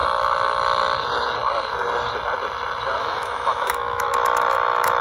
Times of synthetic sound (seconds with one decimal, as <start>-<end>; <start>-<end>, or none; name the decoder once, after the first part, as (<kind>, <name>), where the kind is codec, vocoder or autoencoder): 3.0-5.0 (autoencoder, DAC-VAE)

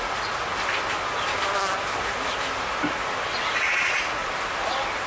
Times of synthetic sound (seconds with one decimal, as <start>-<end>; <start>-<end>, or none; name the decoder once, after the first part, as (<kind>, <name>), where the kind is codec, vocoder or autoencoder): 0.0-0.5 (vocoder, Vocos); 3.6-4.2

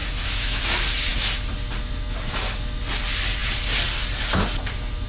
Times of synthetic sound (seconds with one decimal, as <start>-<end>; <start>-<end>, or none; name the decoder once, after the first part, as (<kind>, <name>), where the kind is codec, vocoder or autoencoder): 0.0-0.6 (autoencoder, DAC-VAE)

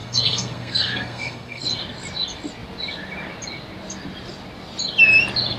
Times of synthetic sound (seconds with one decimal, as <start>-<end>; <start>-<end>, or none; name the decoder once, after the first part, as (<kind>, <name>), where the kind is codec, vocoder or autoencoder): 0.0-1.6 (codec, SNAC)

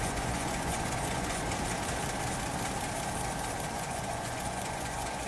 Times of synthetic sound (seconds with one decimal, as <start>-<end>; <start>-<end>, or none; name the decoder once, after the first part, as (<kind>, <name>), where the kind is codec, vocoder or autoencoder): 0.0-1.4 (vocoder, Vocos); 3.7-5.3

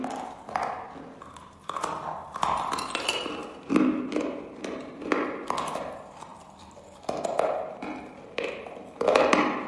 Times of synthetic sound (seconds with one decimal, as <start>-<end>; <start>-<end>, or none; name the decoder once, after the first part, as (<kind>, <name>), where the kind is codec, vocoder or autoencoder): 3.4-4.6 (vocoder, BigVGAN v2)

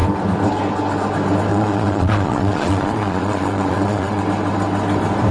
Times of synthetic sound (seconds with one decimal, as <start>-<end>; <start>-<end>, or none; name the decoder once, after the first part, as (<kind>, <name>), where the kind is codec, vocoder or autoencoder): 1.5-4.2 (vocoder, Vocos)

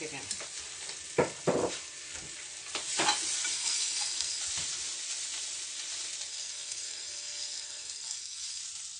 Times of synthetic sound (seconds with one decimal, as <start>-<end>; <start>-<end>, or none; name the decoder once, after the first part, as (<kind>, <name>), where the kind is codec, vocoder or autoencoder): 3.5-4.4 (codec, SNAC); 6.3-8.6